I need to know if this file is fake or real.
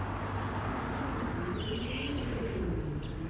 real